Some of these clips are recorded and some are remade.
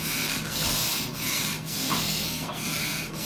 remade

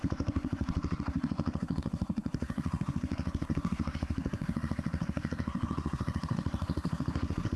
remade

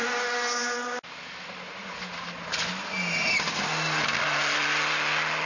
recorded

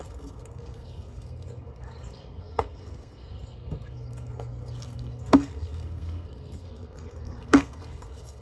remade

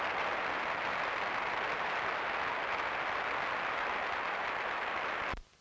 recorded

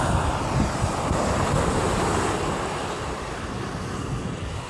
recorded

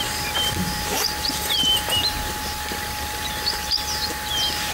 remade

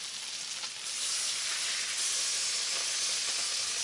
recorded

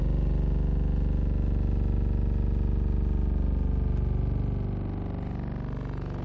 recorded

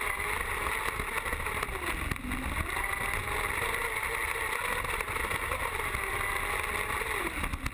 recorded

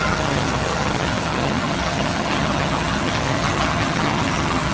remade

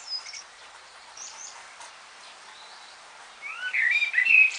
remade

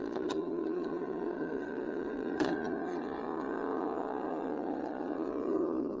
remade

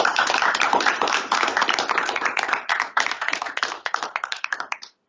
remade